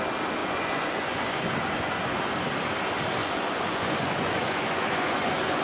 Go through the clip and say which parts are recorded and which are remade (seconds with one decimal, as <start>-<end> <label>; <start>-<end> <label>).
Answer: 0.0-0.4 recorded; 0.4-2.0 remade; 2.0-3.2 recorded; 3.2-5.6 remade